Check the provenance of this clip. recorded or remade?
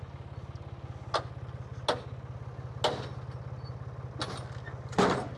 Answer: recorded